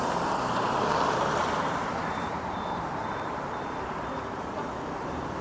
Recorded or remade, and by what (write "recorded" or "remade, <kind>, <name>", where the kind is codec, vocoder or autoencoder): remade, vocoder, BigVGAN v2